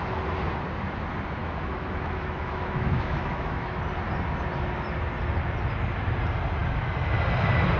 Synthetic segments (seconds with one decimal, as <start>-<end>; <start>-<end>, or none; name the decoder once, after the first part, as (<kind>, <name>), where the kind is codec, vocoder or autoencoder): 1.4-3.8 (autoencoder, DAC-VAE)